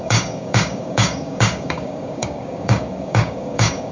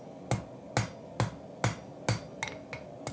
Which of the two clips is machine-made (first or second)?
first